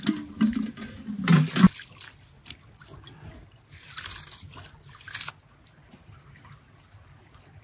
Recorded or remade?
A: recorded